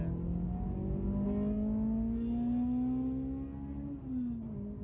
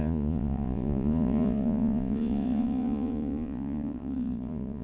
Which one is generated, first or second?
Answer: second